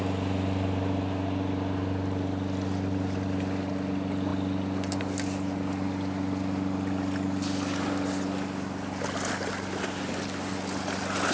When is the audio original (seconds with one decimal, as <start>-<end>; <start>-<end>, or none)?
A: 0.0-11.3